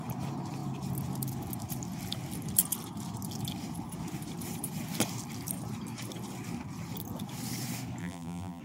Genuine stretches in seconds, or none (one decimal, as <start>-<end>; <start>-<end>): 0.0-8.0